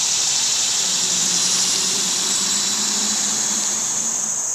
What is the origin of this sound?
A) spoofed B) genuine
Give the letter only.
A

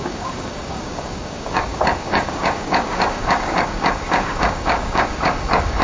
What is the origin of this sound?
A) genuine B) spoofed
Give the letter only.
B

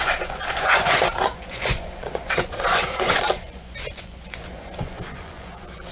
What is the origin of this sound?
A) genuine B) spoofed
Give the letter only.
B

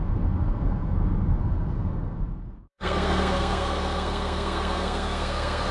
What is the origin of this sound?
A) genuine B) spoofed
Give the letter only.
B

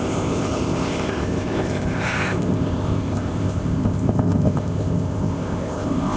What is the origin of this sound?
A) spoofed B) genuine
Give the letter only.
A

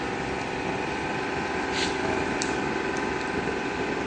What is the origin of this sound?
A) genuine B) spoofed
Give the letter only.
B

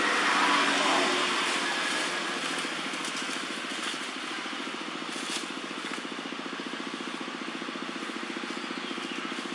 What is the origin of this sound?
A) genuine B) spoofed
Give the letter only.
A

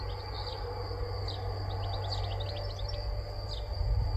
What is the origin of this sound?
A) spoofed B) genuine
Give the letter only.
B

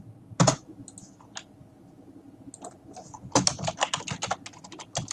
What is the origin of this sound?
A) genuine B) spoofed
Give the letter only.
A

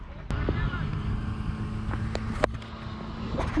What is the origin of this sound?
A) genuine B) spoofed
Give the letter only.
A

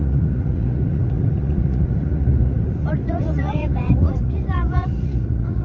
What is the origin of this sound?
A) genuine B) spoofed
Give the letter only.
B